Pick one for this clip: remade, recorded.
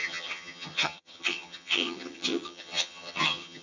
remade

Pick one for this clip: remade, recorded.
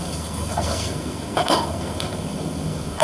remade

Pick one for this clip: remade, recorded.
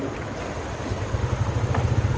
recorded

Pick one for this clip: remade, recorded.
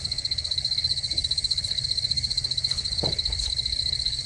remade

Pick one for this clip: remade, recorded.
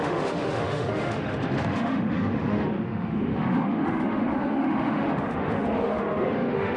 remade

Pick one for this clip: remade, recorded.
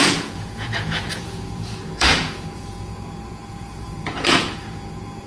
remade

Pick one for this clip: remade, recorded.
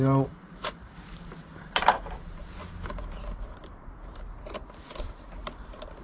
remade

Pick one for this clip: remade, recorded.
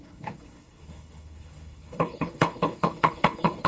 remade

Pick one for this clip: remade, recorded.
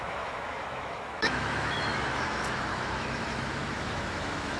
remade